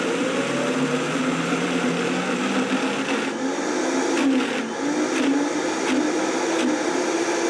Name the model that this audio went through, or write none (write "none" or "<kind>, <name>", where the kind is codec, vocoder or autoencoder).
none